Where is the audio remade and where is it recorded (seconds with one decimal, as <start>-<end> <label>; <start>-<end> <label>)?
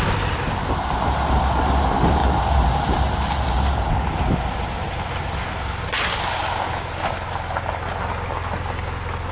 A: 0.0-9.3 recorded